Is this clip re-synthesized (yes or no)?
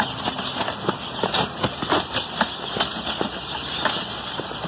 no